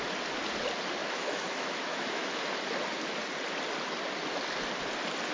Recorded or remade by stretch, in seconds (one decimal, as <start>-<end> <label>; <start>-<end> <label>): 0.0-1.0 recorded; 1.0-2.4 remade; 2.4-5.3 recorded